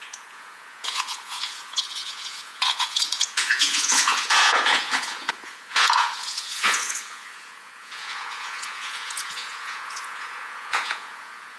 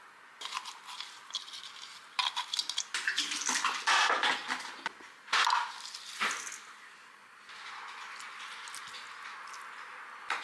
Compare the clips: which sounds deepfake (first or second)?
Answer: first